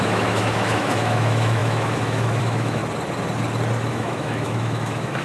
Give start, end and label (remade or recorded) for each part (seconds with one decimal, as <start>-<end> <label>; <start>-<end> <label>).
0.0-2.8 remade; 2.8-3.9 recorded; 3.9-5.2 remade